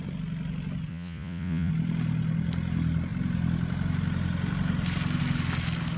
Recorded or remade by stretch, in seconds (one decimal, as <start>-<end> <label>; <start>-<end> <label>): 0.0-0.9 recorded; 0.9-1.7 remade; 1.7-6.0 recorded